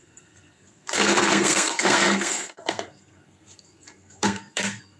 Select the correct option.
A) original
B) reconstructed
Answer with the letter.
B